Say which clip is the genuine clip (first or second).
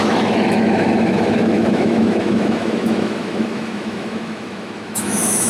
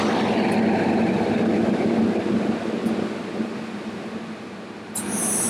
second